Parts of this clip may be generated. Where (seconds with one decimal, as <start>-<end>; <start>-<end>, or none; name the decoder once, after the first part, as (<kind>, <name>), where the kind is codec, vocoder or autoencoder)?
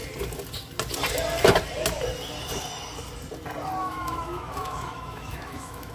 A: 3.8-5.9 (autoencoder, DAC-VAE)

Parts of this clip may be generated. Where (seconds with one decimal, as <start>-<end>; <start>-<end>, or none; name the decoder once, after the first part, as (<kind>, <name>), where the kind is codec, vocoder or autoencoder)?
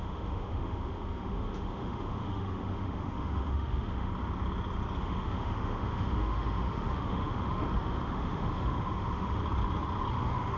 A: 0.0-4.1 (autoencoder, DAC-VAE); 5.0-9.4; 10.1-10.6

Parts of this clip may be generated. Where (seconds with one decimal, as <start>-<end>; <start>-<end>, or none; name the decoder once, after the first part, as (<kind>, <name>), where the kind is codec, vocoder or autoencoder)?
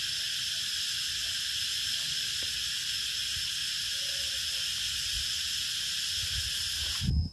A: none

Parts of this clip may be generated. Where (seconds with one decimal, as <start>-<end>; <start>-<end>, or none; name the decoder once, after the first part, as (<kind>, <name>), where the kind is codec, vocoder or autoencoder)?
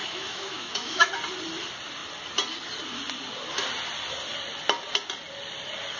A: 0.0-1.1 (autoencoder, DAC-VAE)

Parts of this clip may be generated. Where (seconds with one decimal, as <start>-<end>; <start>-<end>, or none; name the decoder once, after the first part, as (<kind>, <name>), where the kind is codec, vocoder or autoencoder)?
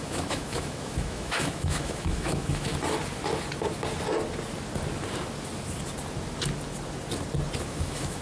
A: 0.0-2.7 (autoencoder, DAC-VAE); 7.6-8.2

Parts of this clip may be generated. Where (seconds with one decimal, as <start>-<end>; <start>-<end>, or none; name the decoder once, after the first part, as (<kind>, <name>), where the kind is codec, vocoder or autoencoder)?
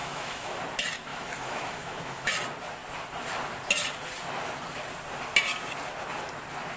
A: 0.0-0.6 (autoencoder, DAC-VAE); 1.1-2.3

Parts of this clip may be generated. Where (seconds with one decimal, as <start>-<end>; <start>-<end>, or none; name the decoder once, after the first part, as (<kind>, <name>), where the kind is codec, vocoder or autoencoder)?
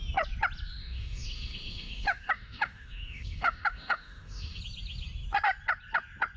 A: 0.8-4.6 (autoencoder, DAC-VAE)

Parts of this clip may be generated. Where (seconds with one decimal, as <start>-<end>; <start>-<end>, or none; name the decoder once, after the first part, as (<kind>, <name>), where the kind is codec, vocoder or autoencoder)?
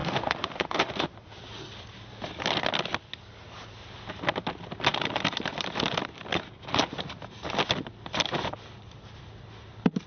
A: 0.0-1.4 (autoencoder, DAC-VAE)